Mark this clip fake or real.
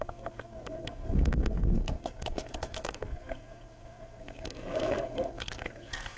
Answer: fake